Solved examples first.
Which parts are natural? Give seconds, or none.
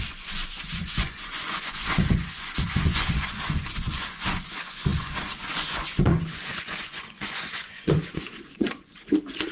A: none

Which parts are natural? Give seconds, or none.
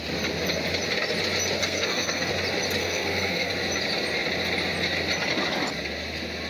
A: 0.0-1.6; 2.3-2.8; 3.5-6.5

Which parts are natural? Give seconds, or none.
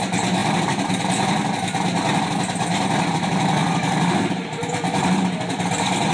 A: 0.0-6.1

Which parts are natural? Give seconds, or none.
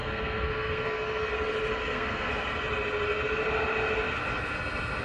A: 1.3-1.8; 2.3-5.0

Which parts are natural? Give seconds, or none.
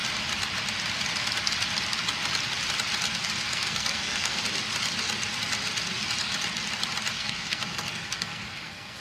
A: 0.0-3.5; 4.4-7.1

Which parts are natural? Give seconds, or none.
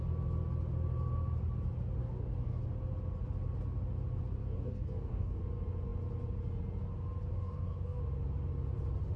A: 0.0-2.0; 2.6-4.4; 5.4-7.3; 8.0-9.2